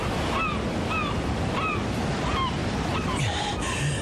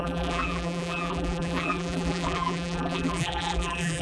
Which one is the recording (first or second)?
first